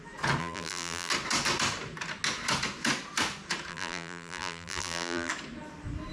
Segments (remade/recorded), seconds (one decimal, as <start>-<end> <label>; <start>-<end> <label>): 0.0-0.4 recorded; 0.4-1.1 remade; 1.1-3.7 recorded; 3.7-5.3 remade; 5.3-6.1 recorded